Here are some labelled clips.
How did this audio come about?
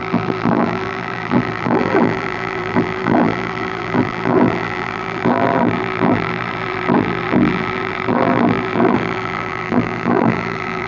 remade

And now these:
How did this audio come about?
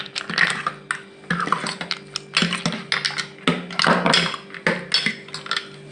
recorded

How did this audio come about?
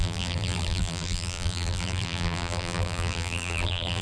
remade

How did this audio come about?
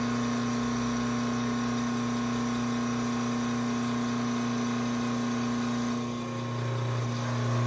recorded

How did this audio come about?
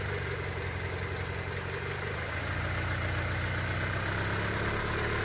recorded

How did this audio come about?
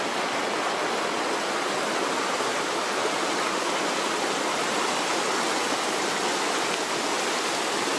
recorded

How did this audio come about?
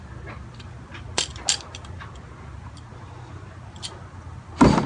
recorded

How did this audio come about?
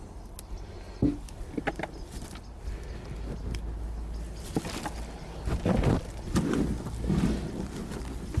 recorded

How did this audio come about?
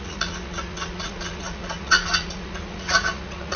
remade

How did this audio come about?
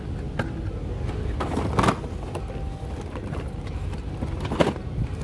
recorded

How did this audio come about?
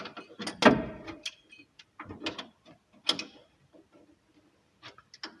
recorded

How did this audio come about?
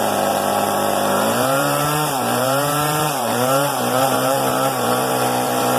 remade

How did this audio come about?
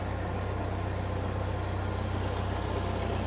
recorded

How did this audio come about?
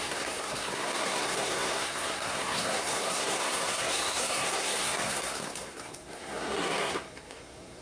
remade